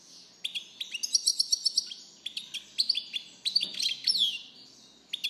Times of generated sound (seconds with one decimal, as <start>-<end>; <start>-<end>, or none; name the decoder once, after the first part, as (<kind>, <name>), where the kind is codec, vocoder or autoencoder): none